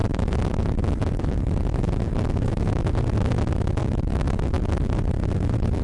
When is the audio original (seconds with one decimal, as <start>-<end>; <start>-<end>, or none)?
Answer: 3.3-3.8